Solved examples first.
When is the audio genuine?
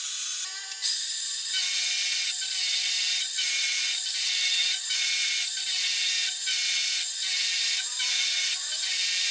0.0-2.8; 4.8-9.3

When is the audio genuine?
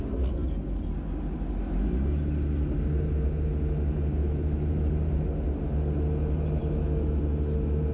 0.0-4.2; 5.1-7.9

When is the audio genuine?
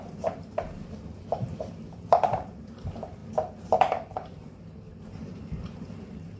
none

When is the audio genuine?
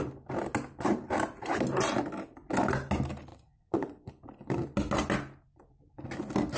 0.0-3.3; 4.1-6.6